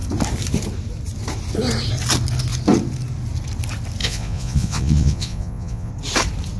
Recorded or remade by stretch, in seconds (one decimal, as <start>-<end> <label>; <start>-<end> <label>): 0.0-4.0 recorded; 4.0-5.9 remade; 5.9-6.6 recorded